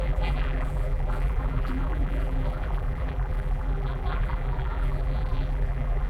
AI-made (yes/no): yes